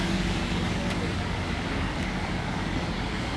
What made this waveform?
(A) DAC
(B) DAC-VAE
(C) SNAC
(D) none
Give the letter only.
A